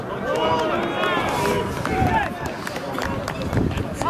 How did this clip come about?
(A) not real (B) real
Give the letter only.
B